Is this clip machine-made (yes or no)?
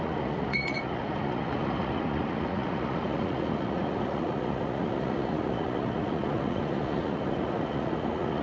yes